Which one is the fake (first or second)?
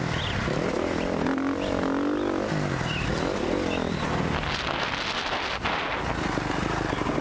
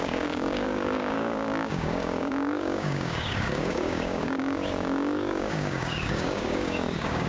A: second